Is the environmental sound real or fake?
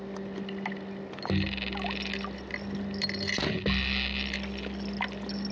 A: real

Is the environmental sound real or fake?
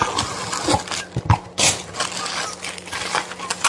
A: real